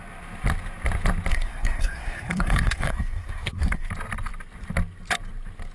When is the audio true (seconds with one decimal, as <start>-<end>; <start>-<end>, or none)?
0.0-1.3; 3.9-5.7